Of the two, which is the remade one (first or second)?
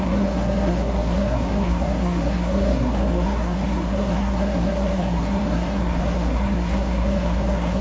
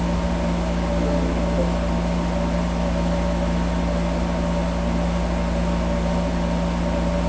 first